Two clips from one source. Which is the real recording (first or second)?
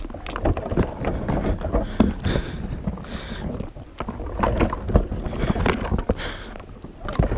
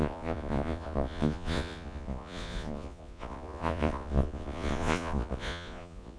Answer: first